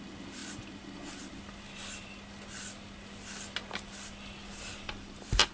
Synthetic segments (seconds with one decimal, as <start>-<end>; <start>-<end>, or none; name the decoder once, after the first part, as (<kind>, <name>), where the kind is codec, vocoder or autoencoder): 4.5-5.5 (vocoder, BigVGAN v2)